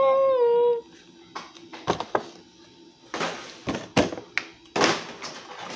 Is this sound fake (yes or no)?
no